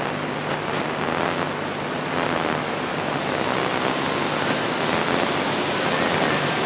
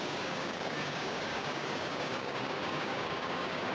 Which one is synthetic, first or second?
second